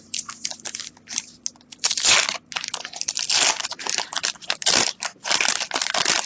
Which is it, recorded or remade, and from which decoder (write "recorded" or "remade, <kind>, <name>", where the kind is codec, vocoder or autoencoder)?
recorded